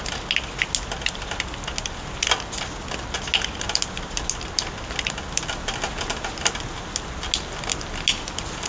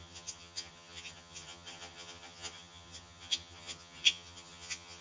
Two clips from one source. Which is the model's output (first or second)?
second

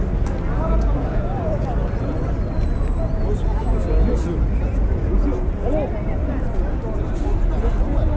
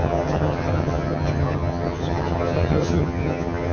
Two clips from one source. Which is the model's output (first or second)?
second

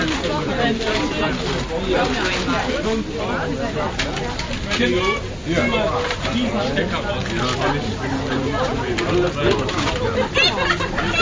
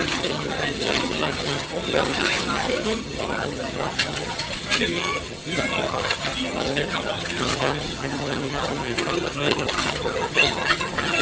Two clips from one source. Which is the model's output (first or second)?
second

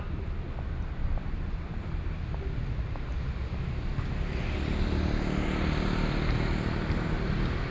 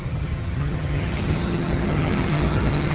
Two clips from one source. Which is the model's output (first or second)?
second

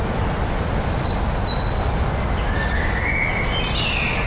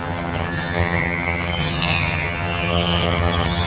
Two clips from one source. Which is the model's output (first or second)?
second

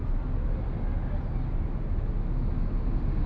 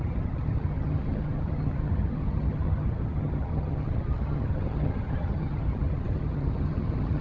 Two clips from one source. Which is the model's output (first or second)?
second